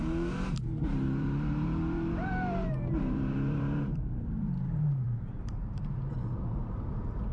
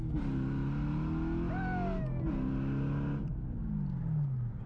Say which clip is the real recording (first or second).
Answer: second